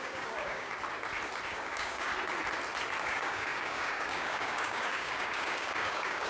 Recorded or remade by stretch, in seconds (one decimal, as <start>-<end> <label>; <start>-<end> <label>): 0.0-0.7 remade; 0.7-1.5 recorded; 1.5-2.1 remade; 2.1-3.0 recorded; 3.0-6.3 remade